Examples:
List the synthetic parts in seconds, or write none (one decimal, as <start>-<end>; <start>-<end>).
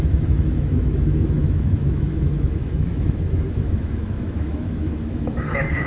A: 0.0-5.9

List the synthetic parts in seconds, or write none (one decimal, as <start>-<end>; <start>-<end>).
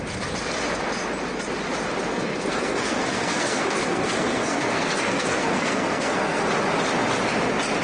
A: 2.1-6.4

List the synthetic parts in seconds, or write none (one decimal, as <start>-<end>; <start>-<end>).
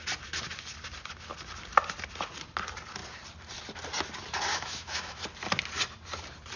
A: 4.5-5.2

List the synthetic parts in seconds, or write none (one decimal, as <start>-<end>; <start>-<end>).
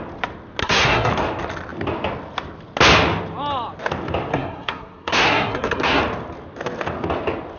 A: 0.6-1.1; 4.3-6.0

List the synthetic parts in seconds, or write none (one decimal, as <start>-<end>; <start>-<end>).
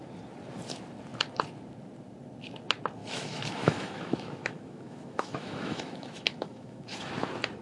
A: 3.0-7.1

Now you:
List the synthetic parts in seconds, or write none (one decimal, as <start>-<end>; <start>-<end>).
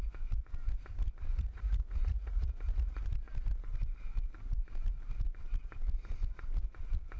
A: 1.3-3.1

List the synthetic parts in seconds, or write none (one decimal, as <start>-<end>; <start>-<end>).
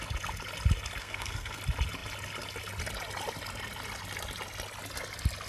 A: 1.0-1.6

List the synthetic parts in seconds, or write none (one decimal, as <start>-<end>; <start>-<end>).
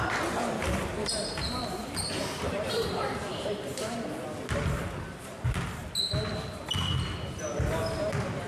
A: 0.6-3.9